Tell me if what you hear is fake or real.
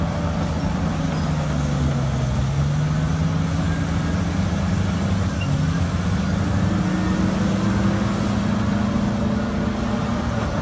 real